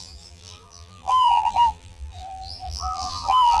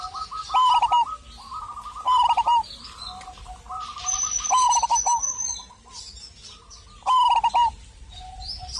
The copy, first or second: first